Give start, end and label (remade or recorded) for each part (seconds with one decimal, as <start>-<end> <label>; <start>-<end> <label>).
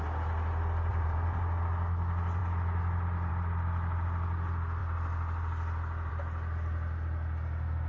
0.0-0.9 recorded; 0.9-1.4 remade; 1.4-7.9 recorded